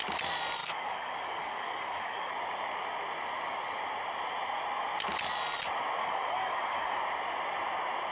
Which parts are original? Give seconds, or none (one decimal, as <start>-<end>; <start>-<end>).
0.0-0.6; 2.3-6.0; 7.0-8.1